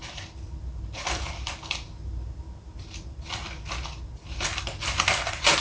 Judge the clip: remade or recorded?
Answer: recorded